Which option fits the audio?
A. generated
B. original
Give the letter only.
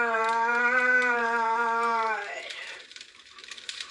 A